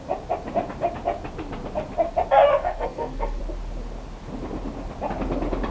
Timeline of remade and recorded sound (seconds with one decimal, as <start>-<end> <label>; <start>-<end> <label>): 0.0-2.5 recorded; 2.5-3.4 remade; 3.4-5.7 recorded